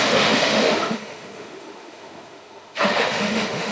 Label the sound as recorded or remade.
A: remade